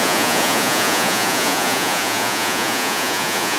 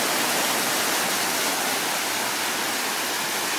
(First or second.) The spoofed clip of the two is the first